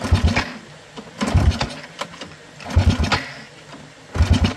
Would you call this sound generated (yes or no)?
no